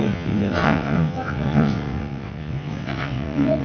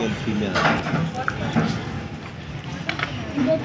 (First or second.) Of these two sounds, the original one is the second